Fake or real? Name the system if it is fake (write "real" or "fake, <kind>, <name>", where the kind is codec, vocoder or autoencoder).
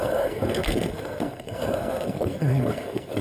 fake, codec, SNAC